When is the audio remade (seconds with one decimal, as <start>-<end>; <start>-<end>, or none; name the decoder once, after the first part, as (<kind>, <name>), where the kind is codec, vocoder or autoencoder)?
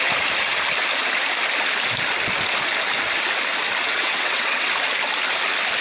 3.9-4.7 (vocoder, WaveNeXt)